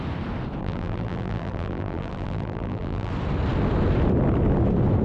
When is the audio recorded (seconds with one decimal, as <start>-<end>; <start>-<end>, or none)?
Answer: 0.0-0.6; 3.1-5.0